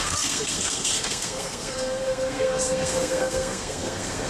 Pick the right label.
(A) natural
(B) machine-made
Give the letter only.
B